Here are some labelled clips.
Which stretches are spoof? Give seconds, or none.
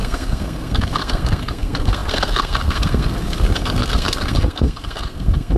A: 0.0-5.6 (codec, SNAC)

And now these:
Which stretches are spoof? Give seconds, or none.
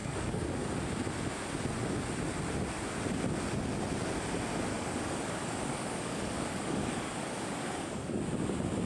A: 0.0-0.7 (codec, DAC); 4.7-8.2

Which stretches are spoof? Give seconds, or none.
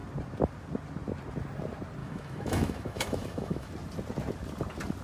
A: 2.0-3.7 (autoencoder, DAC-VAE)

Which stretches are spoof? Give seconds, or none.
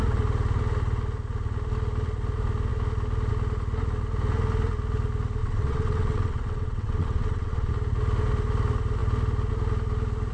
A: 5.4-7.7 (vocoder, WaveNeXt)